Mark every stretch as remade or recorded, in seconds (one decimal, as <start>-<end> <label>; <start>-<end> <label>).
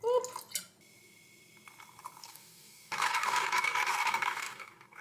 0.0-2.2 recorded; 2.2-5.0 remade